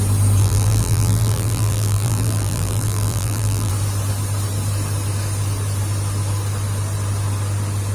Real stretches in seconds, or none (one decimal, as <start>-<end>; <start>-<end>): 0.0-0.4; 3.7-7.9